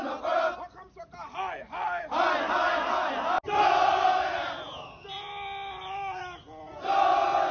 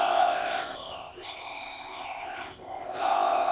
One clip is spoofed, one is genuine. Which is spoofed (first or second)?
second